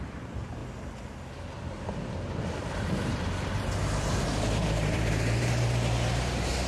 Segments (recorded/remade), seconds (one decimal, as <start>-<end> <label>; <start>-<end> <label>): 0.0-0.6 remade; 0.6-2.6 recorded; 2.6-6.7 remade